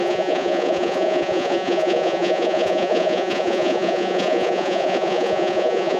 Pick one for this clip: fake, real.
fake